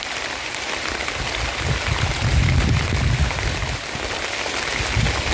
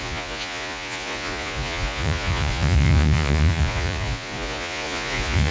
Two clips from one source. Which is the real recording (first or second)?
first